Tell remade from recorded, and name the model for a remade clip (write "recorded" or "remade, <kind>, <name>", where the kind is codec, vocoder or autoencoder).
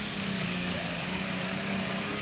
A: remade, codec, DAC